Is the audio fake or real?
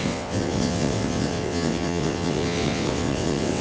fake